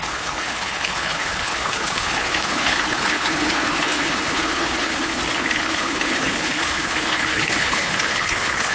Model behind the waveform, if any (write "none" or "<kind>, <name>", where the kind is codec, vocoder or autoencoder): codec, HILCodec